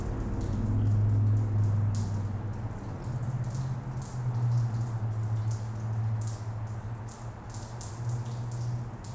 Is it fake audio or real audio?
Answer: real